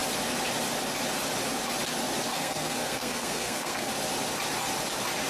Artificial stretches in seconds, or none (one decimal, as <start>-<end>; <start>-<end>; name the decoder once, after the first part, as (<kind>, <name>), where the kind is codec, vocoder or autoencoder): 2.3-3.9 (codec, SNAC)